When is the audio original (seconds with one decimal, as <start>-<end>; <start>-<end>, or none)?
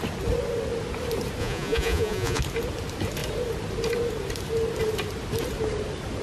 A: 0.0-1.4; 2.4-6.2